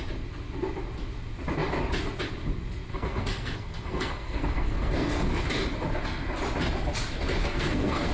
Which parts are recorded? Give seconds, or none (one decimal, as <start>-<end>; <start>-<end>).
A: 0.0-2.9; 5.4-7.4